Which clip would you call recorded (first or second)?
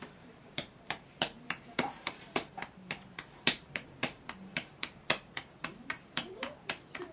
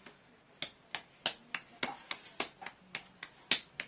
second